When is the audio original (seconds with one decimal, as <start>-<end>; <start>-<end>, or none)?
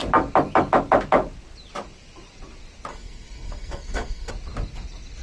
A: 0.0-2.9; 4.3-5.2